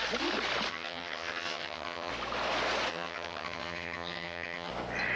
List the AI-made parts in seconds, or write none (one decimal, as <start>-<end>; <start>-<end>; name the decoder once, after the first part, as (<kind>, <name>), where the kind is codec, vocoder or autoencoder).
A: 0.7-2.1 (vocoder, HiFi-GAN); 2.9-4.7